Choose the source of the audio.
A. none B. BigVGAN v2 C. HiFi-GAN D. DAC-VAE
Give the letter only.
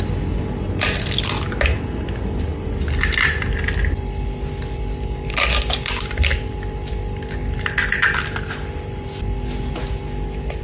A